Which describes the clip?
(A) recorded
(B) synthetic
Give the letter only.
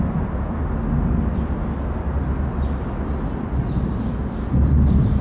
A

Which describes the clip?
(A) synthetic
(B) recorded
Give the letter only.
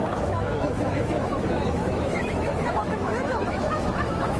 A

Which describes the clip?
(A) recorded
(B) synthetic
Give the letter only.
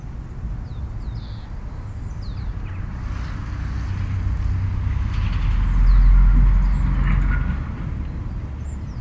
A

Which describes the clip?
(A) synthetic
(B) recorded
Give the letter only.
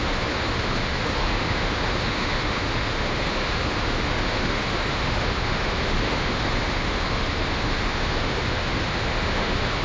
A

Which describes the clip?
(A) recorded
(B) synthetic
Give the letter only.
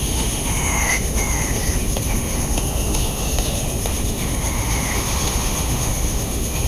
B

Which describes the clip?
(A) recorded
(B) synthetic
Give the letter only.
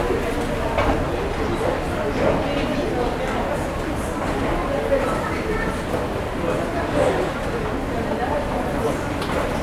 A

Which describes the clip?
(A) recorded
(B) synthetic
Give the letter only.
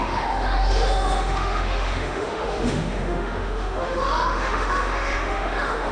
B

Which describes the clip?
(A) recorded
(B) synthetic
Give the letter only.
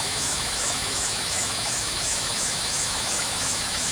B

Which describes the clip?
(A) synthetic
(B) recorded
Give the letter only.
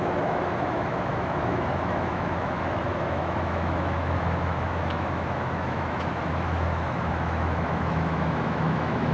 A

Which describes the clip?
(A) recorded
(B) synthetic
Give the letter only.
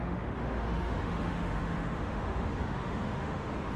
B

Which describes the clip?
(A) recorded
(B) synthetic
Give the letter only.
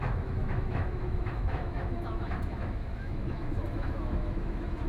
B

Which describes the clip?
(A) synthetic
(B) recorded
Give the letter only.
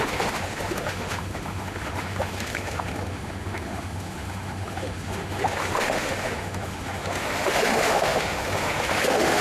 A